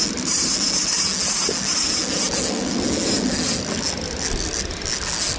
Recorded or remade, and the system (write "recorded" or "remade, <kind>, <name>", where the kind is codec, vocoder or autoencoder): recorded